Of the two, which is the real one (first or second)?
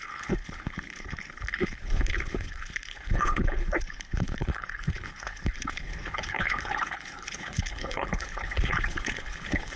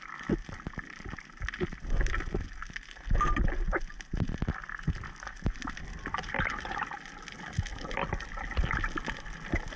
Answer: second